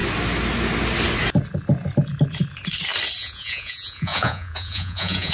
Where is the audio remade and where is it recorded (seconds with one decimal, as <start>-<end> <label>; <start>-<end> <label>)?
0.0-3.2 recorded; 3.2-5.3 remade

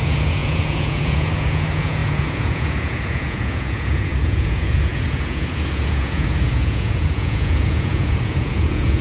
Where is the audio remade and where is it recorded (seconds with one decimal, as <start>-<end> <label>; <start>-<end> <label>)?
0.0-9.0 remade